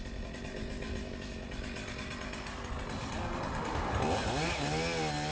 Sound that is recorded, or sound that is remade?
recorded